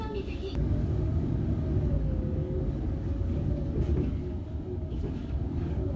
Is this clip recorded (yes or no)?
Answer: no